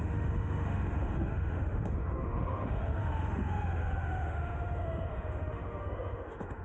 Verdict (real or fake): fake